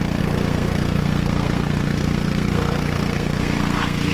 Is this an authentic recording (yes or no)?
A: no